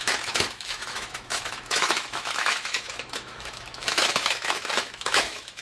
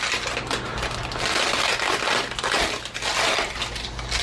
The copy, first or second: first